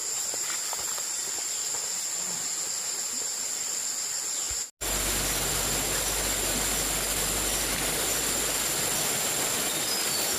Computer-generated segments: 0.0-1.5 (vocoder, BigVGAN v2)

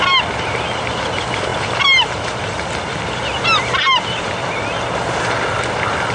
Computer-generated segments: none

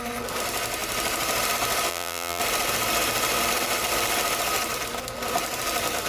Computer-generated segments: 1.9-2.4 (vocoder, BigVGAN v2)

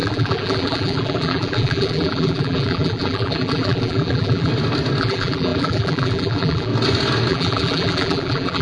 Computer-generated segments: 0.0-4.5 (vocoder, BigVGAN v2); 5.0-6.7; 7.3-8.6

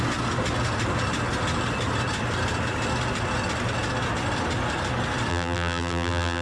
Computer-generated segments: 5.3-6.4 (vocoder, BigVGAN v2)

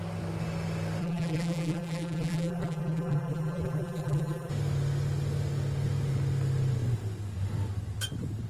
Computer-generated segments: 1.0-4.5 (vocoder, BigVGAN v2)